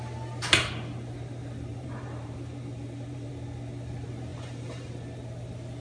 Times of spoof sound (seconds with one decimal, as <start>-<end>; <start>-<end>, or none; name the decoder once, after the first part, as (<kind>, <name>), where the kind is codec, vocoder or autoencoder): 1.7-3.3 (vocoder, BigVGAN v2); 4.3-4.9